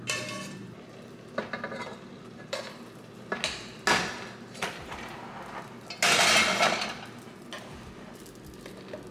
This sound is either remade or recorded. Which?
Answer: recorded